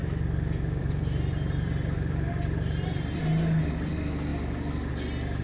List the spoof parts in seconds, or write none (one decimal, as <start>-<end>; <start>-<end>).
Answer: 0.0-3.2